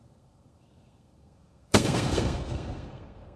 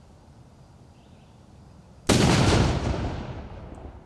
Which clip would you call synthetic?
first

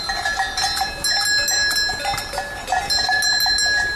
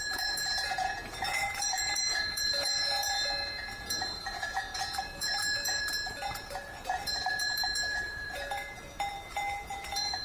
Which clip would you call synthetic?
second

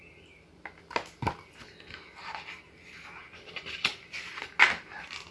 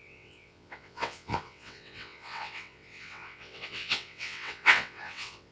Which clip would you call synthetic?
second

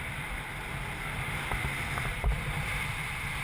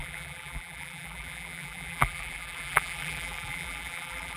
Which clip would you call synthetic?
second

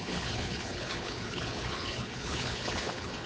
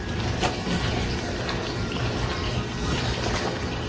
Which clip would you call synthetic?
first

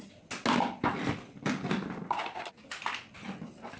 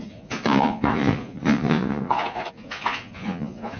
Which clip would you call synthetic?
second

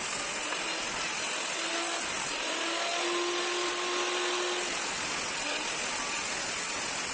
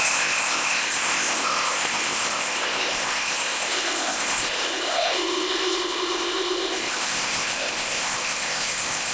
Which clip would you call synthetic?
second